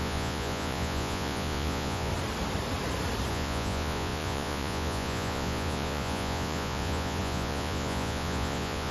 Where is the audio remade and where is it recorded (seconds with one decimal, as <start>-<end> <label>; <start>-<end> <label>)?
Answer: 0.0-2.1 remade; 2.1-3.3 recorded; 3.3-8.9 remade